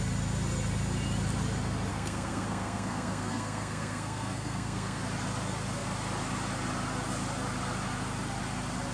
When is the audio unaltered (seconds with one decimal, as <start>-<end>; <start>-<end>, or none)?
0.0-1.9; 5.0-8.9

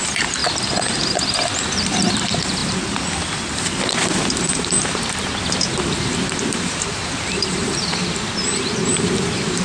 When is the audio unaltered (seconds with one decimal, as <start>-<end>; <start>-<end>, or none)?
0.4-1.1; 2.6-4.4; 5.3-5.9

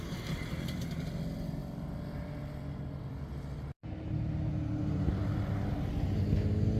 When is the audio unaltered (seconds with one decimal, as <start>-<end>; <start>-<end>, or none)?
0.0-6.8